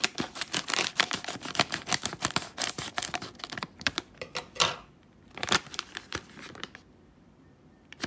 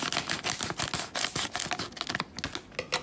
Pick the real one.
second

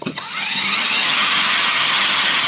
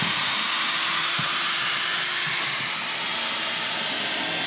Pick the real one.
second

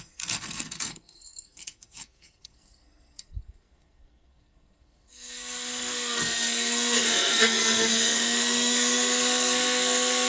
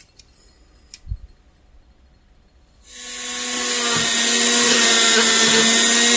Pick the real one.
second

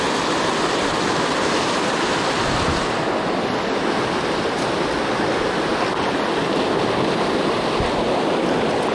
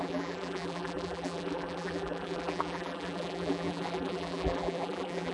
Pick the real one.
first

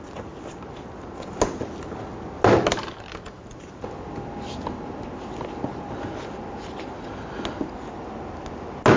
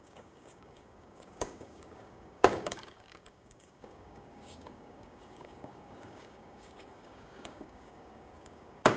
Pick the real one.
first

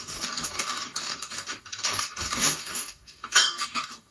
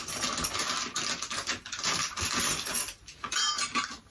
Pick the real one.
second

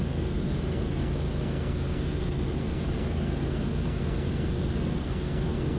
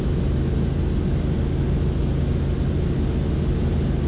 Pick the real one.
second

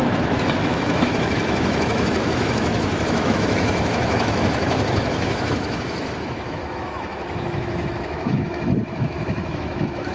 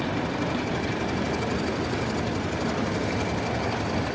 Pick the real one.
second